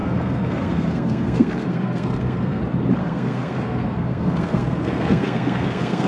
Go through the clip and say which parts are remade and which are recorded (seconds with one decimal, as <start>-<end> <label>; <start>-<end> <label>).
0.0-2.6 remade; 2.6-3.0 recorded; 3.0-6.1 remade